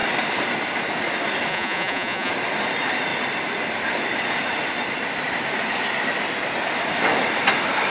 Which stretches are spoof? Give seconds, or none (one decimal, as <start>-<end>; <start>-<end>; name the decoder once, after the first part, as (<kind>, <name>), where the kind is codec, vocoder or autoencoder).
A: 1.5-2.3 (vocoder, Vocos)